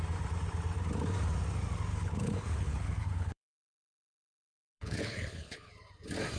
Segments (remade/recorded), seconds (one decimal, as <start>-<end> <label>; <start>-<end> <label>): 0.0-1.9 recorded; 1.9-5.7 remade; 5.7-6.4 recorded